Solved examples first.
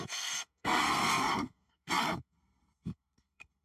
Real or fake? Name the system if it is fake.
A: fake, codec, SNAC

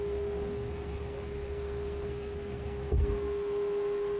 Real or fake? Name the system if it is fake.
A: fake, codec, SNAC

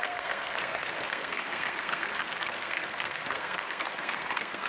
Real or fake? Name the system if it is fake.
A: fake, codec, SNAC